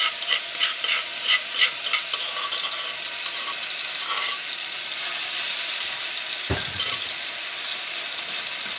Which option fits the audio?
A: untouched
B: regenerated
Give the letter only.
A